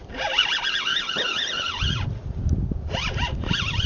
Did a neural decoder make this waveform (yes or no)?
no